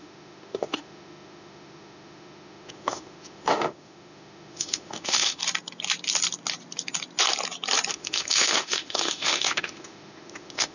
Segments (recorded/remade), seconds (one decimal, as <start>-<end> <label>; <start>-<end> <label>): 0.0-5.4 remade; 5.4-7.9 recorded; 7.9-10.7 remade